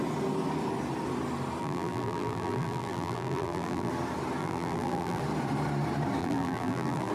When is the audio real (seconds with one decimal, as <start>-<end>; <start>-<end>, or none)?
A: 0.0-1.6; 3.9-4.4; 5.2-6.2

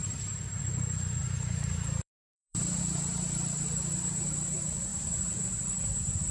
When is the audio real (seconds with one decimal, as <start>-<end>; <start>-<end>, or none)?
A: 0.6-1.2; 2.8-4.9; 5.6-6.3

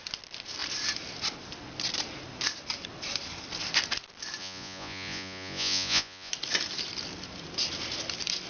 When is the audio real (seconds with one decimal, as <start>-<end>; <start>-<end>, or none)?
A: 0.0-4.4; 6.3-8.5

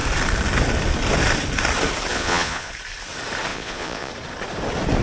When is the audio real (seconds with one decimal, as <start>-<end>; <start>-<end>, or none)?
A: 0.0-2.1; 2.7-3.5; 4.1-5.0